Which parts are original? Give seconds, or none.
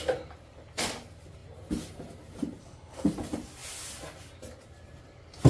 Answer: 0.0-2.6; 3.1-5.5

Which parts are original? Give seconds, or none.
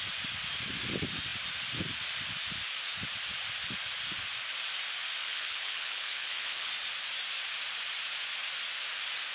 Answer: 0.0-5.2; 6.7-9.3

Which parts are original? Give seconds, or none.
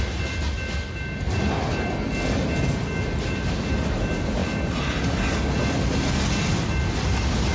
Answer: 0.0-7.5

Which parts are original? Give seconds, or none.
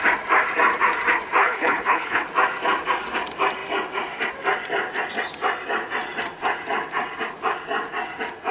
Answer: 0.0-1.4; 2.3-8.5